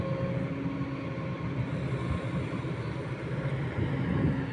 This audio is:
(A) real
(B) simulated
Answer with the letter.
A